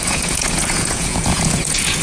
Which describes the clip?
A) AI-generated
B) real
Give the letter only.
A